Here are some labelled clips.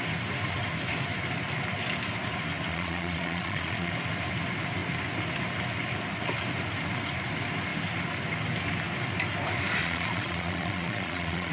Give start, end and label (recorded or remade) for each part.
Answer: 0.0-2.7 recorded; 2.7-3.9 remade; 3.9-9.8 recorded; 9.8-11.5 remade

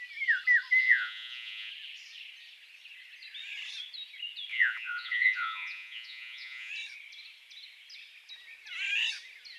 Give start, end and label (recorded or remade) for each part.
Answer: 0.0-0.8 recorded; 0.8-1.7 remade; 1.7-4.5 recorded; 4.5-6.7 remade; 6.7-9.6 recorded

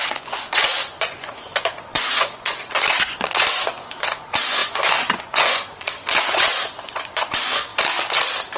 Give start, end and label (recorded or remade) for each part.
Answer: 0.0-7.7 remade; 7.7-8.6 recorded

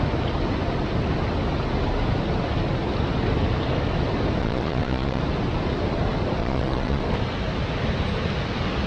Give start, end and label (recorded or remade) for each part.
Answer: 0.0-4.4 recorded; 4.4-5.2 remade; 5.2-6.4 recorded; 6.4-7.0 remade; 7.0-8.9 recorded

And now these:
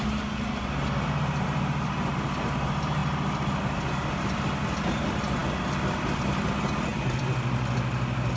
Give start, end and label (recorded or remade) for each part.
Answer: 0.0-8.4 recorded